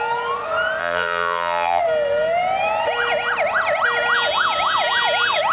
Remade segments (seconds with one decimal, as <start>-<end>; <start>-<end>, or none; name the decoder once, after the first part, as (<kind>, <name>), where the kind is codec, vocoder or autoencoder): 0.8-1.8 (vocoder, BigVGAN v2)